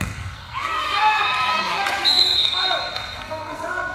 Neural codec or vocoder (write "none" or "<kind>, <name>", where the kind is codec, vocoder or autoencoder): codec, SNAC